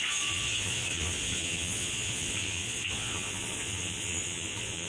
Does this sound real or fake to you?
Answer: fake